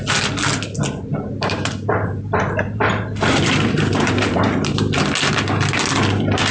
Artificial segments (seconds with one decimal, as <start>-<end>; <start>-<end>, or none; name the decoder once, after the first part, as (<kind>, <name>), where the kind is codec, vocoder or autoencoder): 1.1-5.0 (vocoder, BigVGAN v2)